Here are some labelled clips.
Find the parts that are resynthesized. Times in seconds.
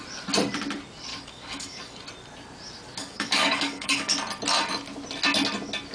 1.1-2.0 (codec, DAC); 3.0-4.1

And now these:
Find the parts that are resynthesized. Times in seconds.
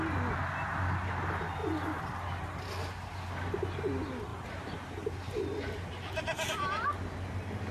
1.6-3.9 (vocoder, BigVGAN v2); 4.3-6.5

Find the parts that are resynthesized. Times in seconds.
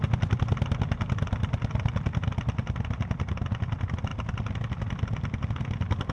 none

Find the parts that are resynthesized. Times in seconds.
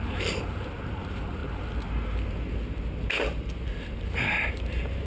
0.0-1.4 (vocoder, BigVGAN v2); 4.5-5.1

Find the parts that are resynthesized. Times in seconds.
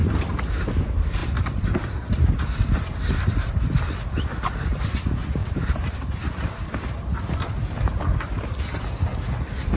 0.0-0.5 (vocoder, BigVGAN v2); 1.2-3.8; 5.4-8.4